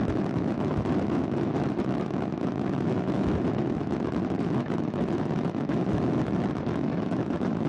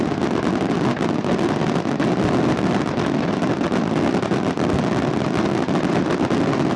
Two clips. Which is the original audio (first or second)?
second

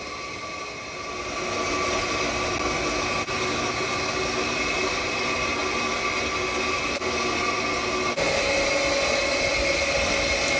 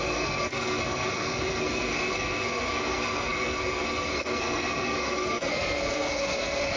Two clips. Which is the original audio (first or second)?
first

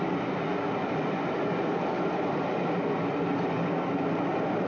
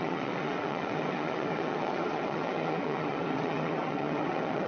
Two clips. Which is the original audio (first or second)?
first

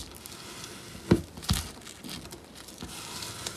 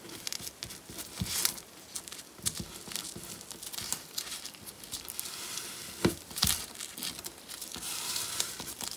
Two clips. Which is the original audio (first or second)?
first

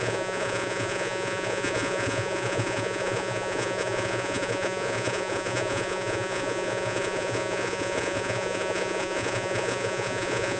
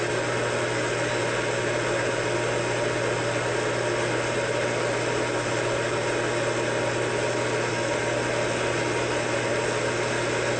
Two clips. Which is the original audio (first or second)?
second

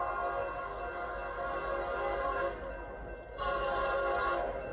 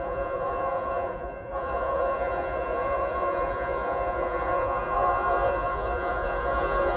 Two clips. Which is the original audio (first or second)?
first